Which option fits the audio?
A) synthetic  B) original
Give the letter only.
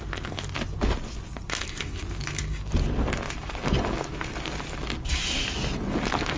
B